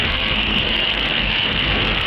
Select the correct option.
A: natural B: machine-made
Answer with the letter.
B